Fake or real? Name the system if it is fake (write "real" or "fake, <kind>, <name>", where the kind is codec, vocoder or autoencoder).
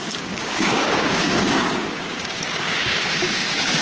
fake, codec, DAC